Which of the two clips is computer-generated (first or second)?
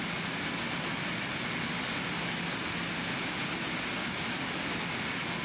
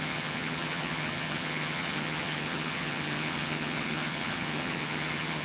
second